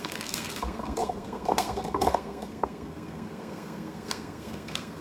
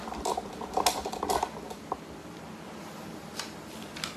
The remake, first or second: first